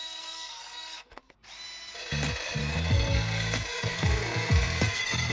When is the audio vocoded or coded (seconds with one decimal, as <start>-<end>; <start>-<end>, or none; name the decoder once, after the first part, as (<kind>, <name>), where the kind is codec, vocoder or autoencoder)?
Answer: 0.0-1.2 (codec, SNAC); 2.6-5.3